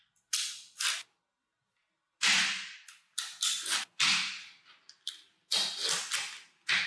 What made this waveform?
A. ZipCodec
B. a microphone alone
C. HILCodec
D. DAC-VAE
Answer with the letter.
B